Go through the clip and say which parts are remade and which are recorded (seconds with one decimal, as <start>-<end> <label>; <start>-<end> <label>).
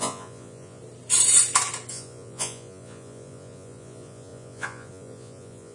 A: 0.0-0.8 remade; 0.8-1.9 recorded; 1.9-5.7 remade